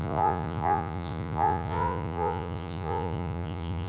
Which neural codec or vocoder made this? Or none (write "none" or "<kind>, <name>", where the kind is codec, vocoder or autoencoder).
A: vocoder, Vocos